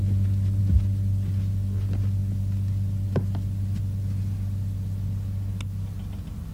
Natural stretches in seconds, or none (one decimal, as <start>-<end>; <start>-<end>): 0.0-6.5